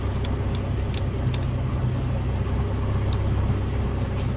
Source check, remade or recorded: recorded